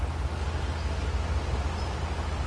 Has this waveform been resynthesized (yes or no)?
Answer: no